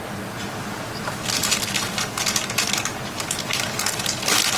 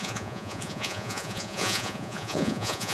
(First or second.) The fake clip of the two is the second